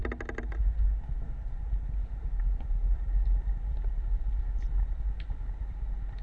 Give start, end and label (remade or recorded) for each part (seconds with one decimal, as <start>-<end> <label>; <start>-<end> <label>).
0.0-6.2 recorded